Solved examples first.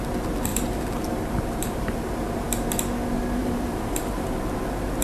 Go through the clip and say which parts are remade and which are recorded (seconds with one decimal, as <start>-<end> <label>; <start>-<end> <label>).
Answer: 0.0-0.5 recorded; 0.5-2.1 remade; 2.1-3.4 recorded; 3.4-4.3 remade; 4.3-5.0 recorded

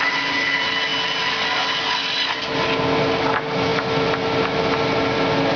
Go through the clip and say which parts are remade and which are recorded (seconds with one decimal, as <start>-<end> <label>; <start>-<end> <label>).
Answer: 0.0-5.6 recorded

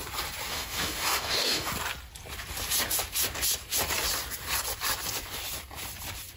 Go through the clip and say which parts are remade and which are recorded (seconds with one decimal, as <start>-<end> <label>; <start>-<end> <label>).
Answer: 0.0-0.5 recorded; 0.5-1.7 remade; 1.7-6.4 recorded